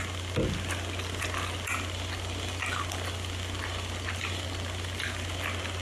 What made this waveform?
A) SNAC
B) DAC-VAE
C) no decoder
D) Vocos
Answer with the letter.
C